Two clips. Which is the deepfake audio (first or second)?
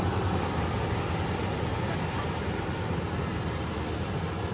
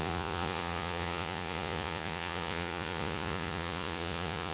second